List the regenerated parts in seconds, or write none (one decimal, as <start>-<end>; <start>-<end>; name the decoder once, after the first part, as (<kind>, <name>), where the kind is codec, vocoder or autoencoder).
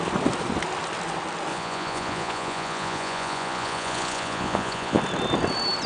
1.5-5.0 (vocoder, Vocos)